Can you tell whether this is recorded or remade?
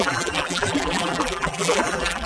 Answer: remade